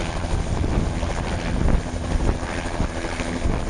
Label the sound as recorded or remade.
recorded